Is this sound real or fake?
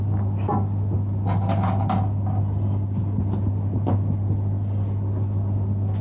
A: real